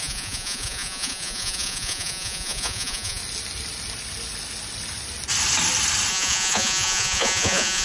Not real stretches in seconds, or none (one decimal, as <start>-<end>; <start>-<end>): 0.0-3.2; 6.1-7.8